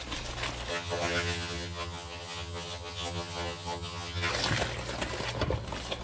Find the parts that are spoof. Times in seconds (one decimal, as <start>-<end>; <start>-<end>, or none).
0.7-4.3